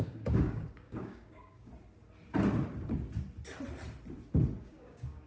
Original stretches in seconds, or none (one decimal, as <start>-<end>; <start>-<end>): 1.7-4.6